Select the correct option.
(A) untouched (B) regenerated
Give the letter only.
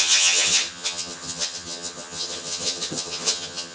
B